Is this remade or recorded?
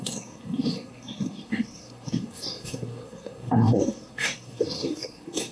remade